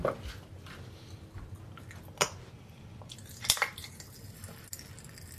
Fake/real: real